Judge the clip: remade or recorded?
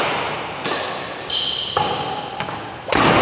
recorded